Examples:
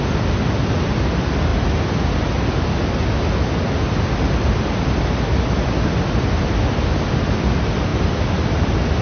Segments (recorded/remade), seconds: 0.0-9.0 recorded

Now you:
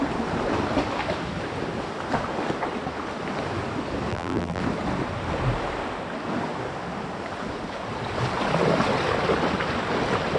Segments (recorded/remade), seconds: 0.0-4.1 recorded; 4.1-4.6 remade; 4.6-10.4 recorded

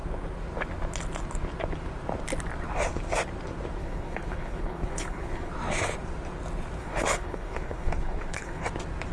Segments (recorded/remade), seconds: 0.0-3.8 recorded; 3.8-5.5 remade; 5.5-6.8 recorded; 6.8-8.7 remade; 8.7-9.1 recorded